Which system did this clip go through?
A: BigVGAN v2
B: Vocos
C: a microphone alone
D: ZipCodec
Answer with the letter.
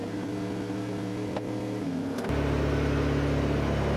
C